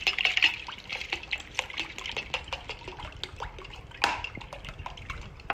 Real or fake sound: real